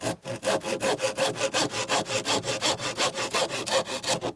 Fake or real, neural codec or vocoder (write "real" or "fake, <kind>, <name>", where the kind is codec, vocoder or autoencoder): real